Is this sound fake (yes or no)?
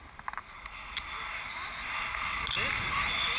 no